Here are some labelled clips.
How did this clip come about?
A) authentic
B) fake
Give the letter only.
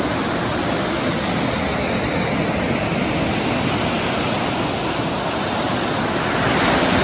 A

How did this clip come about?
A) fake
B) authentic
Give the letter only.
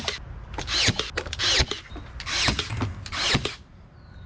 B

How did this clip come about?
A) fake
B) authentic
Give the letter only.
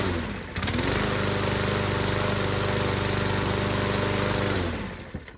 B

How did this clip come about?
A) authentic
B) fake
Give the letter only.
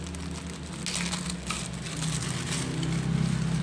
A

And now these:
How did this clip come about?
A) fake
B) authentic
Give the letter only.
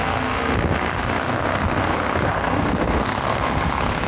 A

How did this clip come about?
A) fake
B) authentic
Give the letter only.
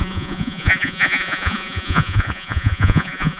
A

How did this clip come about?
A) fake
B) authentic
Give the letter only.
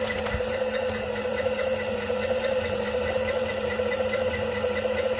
A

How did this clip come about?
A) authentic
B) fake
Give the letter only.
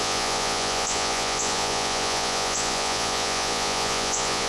B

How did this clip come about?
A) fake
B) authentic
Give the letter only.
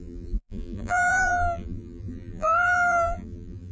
A